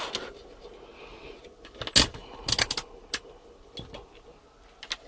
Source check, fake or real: real